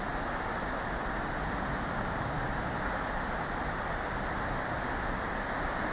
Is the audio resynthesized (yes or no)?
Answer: no